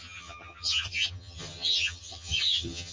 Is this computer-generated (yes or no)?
yes